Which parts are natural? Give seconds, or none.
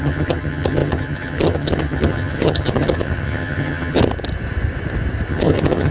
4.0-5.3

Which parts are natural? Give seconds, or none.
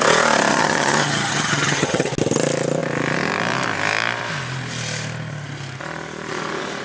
0.0-0.5; 2.1-6.8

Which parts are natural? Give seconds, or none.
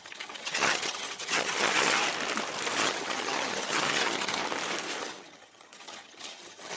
2.0-2.8; 4.4-5.0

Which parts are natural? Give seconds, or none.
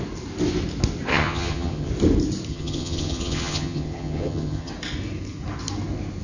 0.0-1.1; 1.9-2.5; 4.7-6.2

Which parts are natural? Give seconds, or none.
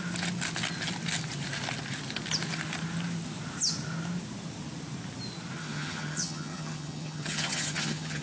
0.0-5.6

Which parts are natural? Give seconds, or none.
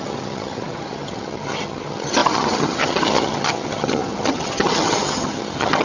none